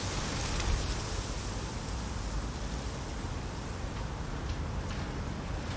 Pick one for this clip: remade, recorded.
recorded